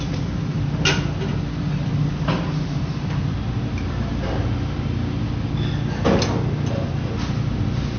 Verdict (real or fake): real